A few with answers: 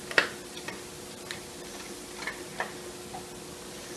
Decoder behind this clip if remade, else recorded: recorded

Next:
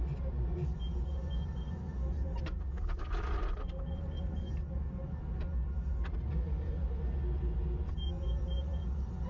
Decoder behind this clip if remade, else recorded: recorded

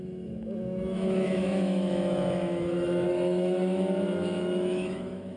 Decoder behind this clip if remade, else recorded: remade, autoencoder, DAC-VAE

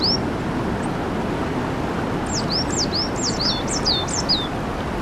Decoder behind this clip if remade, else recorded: recorded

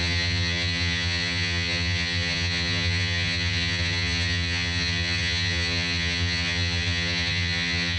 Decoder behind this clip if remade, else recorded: remade, vocoder, HiFi-GAN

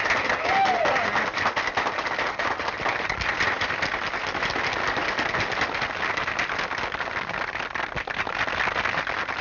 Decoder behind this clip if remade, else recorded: recorded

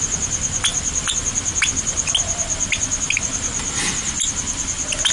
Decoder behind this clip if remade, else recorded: recorded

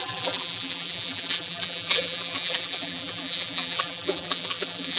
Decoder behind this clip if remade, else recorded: remade, vocoder, BigVGAN v2